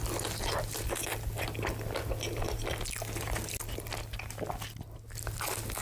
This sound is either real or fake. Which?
real